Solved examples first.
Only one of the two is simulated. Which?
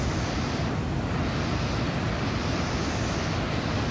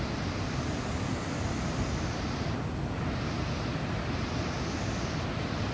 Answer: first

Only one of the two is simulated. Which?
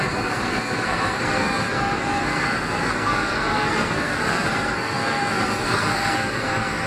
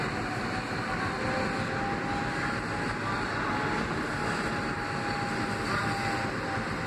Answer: first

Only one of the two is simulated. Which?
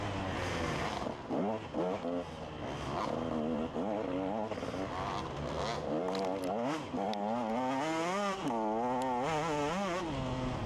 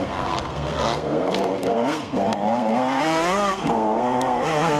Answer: second